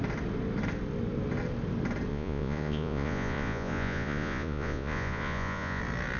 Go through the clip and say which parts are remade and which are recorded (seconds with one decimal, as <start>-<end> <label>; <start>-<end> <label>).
0.0-2.1 recorded; 2.1-5.8 remade; 5.8-6.2 recorded